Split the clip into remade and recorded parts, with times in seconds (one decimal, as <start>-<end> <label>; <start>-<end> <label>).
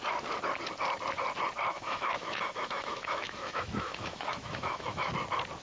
0.0-1.7 recorded; 1.7-5.1 remade; 5.1-5.6 recorded